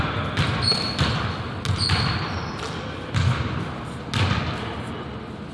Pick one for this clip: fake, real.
real